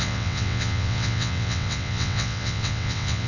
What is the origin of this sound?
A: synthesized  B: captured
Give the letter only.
A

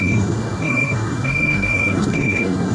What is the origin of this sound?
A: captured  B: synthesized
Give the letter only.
B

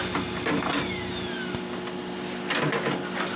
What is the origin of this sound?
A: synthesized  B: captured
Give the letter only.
B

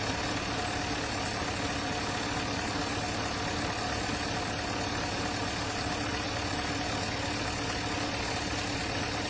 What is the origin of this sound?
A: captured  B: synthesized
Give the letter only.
A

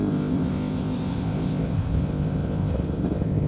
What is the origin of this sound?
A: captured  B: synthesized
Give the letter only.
B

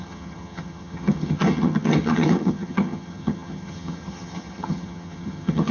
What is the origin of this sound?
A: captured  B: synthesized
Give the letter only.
B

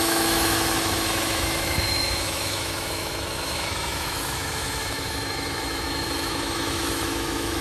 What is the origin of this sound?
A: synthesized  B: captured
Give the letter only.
A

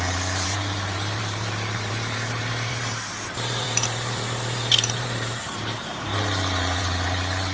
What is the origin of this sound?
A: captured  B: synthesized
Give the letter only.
B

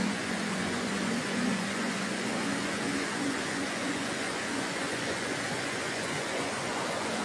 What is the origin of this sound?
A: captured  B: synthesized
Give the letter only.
B